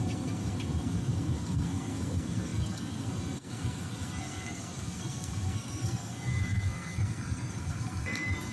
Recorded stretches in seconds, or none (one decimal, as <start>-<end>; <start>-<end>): none

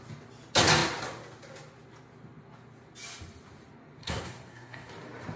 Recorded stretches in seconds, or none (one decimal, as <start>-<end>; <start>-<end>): 0.0-4.0; 4.9-5.4

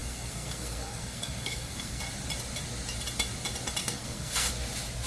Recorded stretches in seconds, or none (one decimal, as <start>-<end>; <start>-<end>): 2.0-3.8; 4.5-5.1